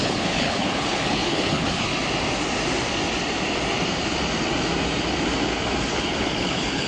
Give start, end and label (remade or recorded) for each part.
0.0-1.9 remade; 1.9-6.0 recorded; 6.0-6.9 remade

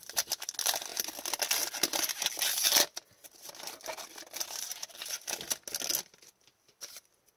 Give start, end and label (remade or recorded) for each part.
0.0-7.4 recorded

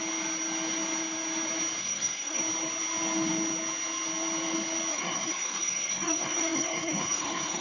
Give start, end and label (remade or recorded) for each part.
0.0-1.8 recorded; 1.8-2.4 remade; 2.4-4.9 recorded; 4.9-7.6 remade